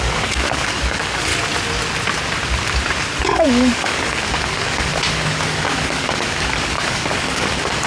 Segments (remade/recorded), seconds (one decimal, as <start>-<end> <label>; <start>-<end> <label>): 0.0-1.3 remade; 1.3-3.2 recorded; 3.2-7.9 remade